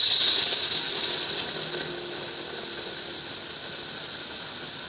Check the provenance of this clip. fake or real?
real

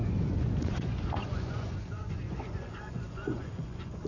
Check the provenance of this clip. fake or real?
fake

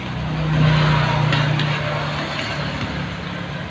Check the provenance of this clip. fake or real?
real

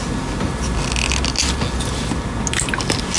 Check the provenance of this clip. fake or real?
real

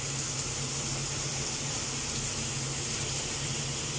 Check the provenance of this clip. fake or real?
real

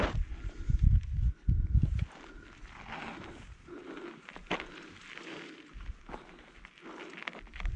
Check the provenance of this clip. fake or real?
real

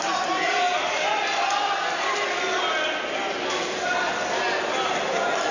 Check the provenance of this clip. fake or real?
real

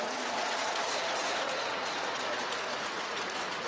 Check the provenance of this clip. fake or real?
fake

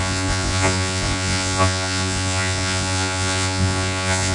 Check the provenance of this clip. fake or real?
fake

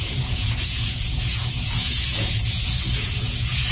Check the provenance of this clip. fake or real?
fake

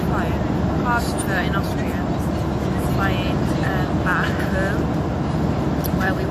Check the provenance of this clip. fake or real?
real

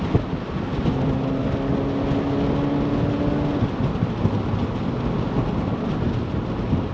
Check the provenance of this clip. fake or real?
real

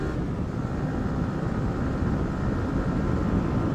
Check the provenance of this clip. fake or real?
real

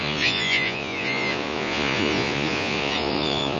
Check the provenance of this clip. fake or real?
fake